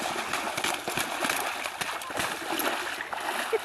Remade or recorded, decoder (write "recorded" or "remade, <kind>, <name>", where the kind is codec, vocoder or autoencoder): recorded